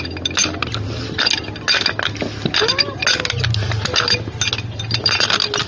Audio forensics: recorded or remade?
recorded